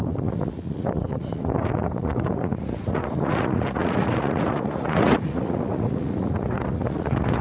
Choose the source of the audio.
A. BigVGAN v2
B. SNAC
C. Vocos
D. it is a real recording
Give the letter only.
C